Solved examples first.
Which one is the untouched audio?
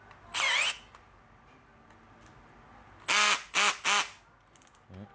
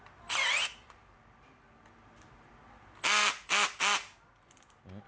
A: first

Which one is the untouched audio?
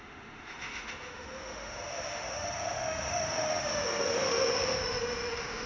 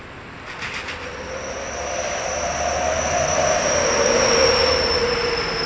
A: second